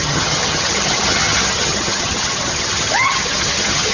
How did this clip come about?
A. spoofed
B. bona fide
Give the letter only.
A